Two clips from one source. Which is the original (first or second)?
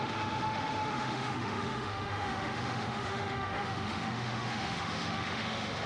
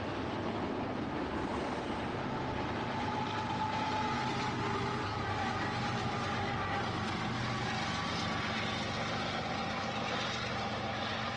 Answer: second